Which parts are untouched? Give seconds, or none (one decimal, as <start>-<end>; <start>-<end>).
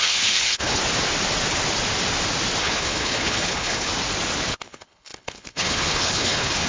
0.8-2.6; 3.9-4.5